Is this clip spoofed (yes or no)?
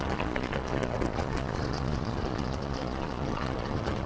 yes